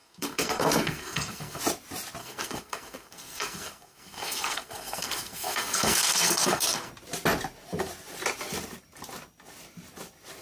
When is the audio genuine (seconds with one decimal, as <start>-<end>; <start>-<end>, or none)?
1.6-2.2; 6.9-10.4

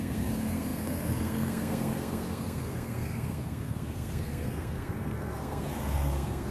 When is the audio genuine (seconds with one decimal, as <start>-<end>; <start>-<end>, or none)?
none

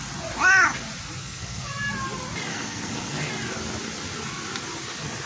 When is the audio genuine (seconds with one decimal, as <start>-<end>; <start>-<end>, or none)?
0.0-1.2; 1.7-2.5; 3.3-5.3

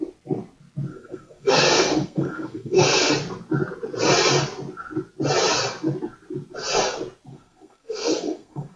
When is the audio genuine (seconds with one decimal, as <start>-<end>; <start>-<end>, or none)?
0.0-0.9; 3.1-7.3

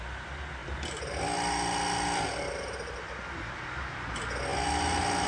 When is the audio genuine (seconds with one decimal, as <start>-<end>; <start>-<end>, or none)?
0.0-5.3

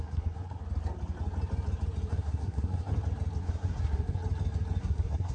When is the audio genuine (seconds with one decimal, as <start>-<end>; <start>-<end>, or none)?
0.6-2.1; 2.9-3.4; 4.2-4.8